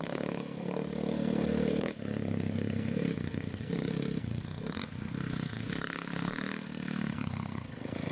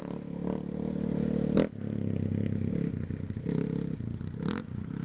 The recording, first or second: second